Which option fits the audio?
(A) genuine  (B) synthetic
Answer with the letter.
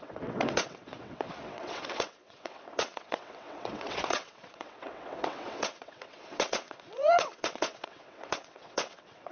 B